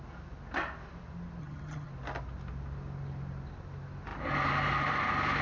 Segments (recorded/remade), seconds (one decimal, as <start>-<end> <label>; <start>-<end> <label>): 0.0-1.4 recorded; 1.4-1.9 remade; 1.9-5.4 recorded